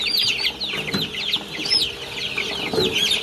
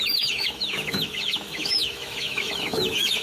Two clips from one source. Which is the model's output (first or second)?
second